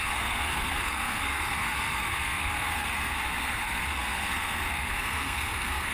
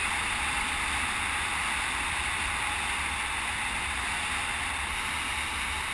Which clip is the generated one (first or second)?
first